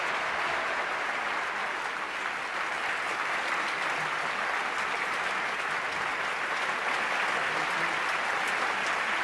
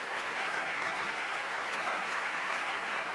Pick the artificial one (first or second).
second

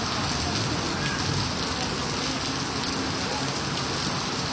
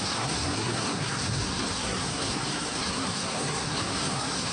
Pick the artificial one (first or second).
second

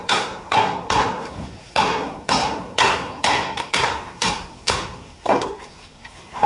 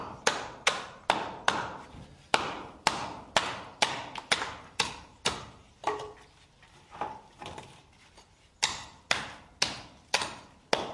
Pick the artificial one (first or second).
first